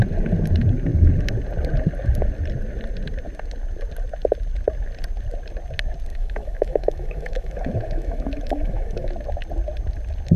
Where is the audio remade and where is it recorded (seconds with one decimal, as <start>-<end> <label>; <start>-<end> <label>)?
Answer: 0.0-6.1 recorded; 6.1-9.1 remade; 9.1-10.4 recorded

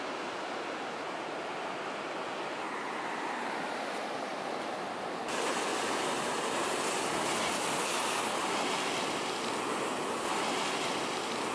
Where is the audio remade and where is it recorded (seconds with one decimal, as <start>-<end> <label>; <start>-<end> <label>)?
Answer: 0.0-5.7 recorded; 5.7-6.5 remade; 6.5-8.4 recorded; 8.4-9.5 remade; 9.5-11.5 recorded

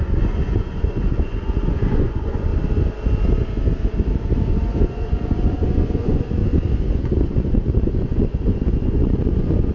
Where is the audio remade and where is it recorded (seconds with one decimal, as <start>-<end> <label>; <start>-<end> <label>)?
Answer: 0.0-2.5 remade; 2.5-4.5 recorded; 4.5-6.4 remade; 6.4-7.0 recorded; 7.0-9.7 remade

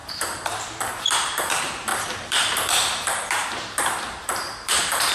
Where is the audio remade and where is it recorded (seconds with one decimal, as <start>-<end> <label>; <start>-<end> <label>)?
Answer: 0.0-5.1 remade

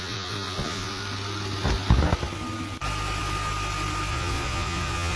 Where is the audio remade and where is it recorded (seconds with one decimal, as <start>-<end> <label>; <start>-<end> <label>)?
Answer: 0.0-1.0 remade; 1.0-4.1 recorded; 4.1-5.2 remade